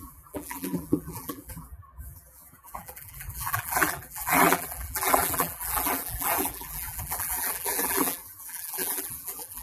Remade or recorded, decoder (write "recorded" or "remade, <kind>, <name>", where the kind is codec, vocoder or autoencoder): remade, vocoder, BigVGAN v2